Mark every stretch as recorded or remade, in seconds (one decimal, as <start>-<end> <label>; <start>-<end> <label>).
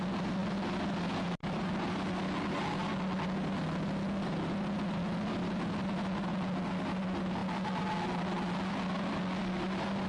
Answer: 0.0-10.1 recorded